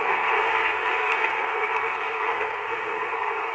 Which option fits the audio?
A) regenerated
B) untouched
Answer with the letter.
A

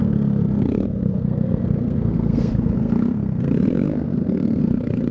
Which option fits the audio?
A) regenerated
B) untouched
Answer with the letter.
A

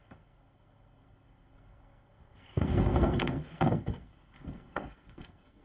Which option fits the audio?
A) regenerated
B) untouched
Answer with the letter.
A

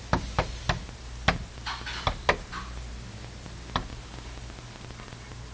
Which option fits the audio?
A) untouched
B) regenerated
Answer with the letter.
A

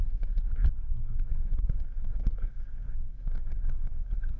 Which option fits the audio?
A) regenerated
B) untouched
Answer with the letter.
A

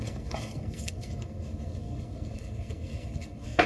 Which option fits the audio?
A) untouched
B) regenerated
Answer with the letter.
B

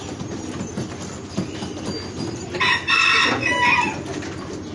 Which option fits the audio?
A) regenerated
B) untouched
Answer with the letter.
B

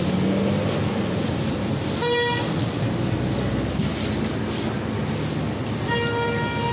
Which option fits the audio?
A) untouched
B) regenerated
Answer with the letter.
A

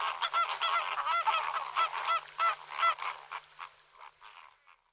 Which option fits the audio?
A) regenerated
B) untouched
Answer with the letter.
B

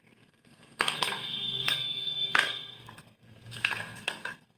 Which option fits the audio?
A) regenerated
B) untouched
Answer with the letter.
A